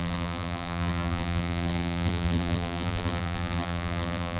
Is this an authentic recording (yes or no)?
no